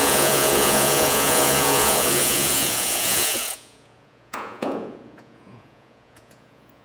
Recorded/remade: remade